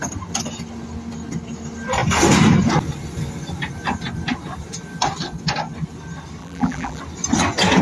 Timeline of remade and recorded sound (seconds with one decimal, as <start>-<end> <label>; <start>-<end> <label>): 0.0-6.4 recorded; 6.4-7.0 remade; 7.0-7.8 recorded